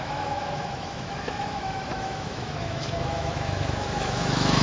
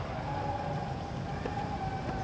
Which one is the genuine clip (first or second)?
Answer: second